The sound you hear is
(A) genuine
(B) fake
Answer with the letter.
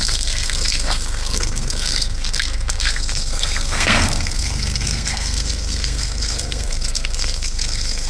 B